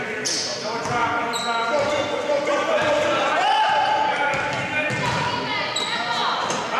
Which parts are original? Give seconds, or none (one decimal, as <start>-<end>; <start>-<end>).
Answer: 0.0-6.8